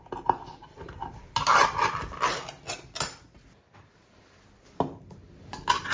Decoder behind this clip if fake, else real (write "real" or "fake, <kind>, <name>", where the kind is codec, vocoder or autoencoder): real